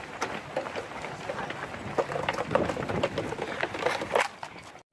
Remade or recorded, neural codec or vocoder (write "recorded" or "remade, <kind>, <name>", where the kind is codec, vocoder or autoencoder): recorded